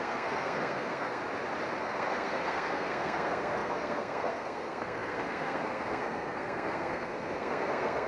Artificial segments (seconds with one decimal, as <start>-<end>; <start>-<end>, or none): 0.0-1.2; 1.8-8.1